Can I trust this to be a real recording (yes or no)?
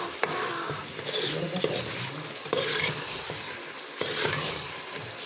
yes